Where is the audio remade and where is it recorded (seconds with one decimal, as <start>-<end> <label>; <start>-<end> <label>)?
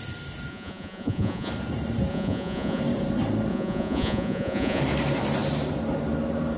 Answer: 0.0-0.5 recorded; 0.5-1.5 remade; 1.5-2.1 recorded; 2.1-2.8 remade; 2.8-3.5 recorded; 3.5-4.8 remade; 4.8-6.6 recorded